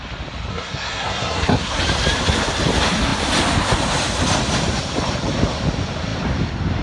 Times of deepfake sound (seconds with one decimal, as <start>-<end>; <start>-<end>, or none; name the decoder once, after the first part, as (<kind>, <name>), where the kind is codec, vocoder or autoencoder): 0.5-1.8 (codec, SNAC)